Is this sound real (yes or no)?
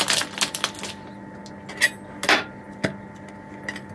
yes